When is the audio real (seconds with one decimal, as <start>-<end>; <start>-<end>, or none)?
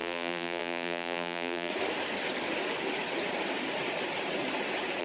1.7-5.0